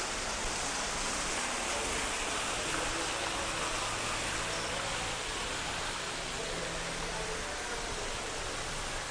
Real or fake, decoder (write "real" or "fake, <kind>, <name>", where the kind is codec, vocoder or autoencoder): real